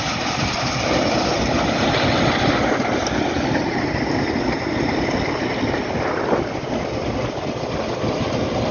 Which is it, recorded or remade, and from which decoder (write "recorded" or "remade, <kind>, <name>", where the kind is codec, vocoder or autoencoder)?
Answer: recorded